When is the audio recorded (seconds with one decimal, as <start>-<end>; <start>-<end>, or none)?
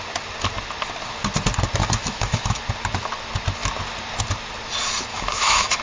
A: 0.0-1.8; 2.6-5.1